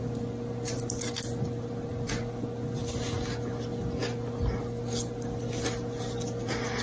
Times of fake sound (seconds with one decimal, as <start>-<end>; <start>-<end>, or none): none